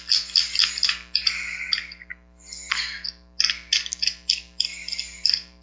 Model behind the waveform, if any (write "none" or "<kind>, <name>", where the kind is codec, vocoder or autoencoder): none